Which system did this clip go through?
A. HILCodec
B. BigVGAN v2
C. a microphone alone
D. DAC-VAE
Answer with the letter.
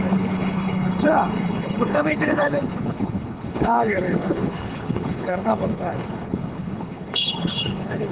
A